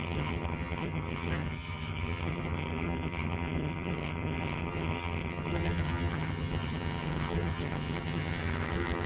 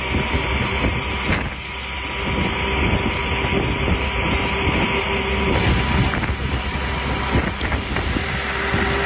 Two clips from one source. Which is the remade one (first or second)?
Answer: first